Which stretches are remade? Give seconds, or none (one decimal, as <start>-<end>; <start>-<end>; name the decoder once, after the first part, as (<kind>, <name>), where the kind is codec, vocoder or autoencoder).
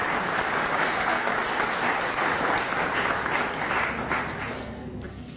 0.9-1.3 (codec, SNAC); 4.5-5.4